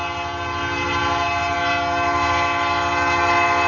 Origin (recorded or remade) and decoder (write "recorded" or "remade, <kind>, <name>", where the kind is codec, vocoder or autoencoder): recorded